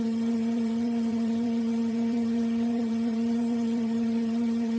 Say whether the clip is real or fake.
fake